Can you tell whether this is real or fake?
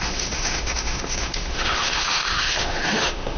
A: fake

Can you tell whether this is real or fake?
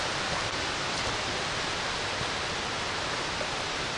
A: real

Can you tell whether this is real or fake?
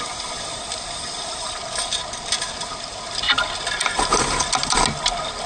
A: real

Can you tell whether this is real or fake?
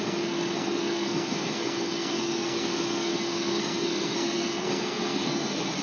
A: fake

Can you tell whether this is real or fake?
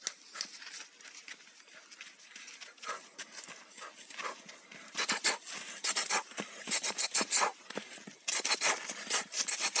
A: real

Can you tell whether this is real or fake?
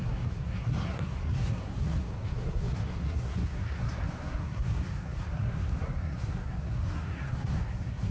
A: fake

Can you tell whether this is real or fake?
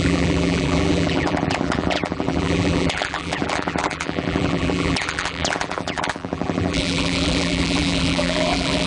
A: fake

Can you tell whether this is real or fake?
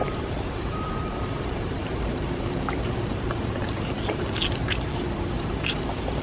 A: fake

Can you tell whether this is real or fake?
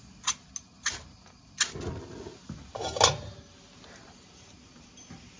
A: real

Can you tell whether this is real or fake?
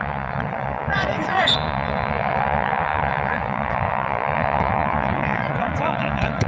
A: fake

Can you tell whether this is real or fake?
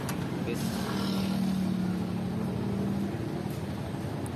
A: real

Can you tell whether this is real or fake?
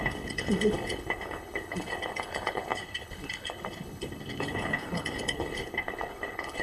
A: fake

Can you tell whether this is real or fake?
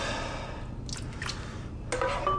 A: real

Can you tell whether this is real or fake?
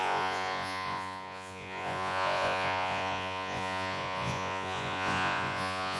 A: fake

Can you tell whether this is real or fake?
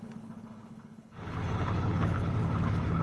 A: fake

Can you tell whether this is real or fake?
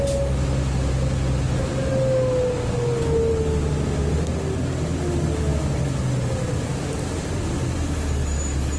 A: real